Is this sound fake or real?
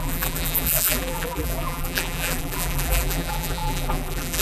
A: fake